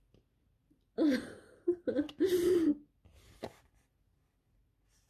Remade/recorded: recorded